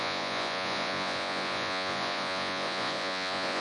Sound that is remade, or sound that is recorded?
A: remade